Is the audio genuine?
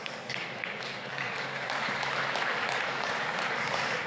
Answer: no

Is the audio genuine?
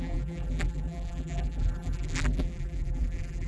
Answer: no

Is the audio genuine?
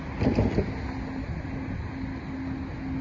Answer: yes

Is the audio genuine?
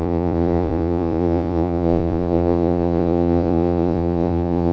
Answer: no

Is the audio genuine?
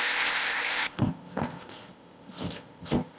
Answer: no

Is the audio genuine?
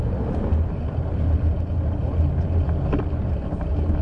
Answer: yes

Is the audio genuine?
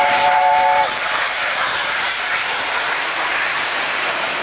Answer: no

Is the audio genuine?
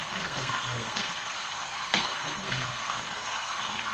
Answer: no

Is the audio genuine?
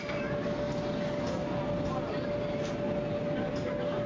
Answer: yes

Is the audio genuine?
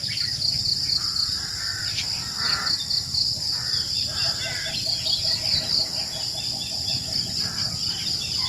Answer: yes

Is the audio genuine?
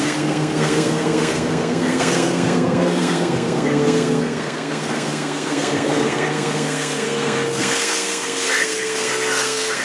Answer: no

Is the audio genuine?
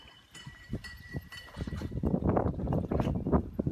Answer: no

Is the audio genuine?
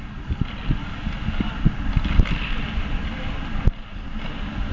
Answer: yes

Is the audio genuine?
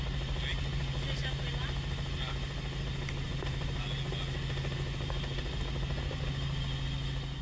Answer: yes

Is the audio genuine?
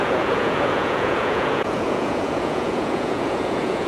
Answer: no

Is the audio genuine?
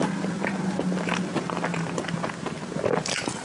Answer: yes